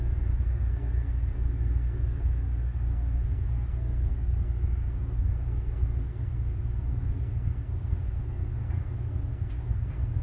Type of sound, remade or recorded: remade